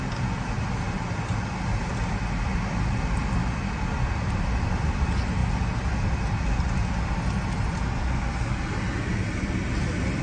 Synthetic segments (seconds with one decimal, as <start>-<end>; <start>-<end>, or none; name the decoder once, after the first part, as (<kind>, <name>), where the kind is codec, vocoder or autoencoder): none